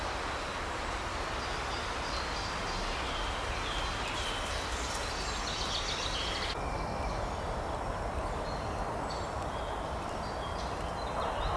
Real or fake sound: real